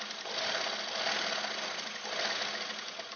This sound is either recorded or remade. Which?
recorded